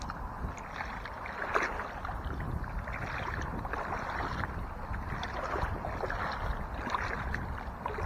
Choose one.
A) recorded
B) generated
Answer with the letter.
A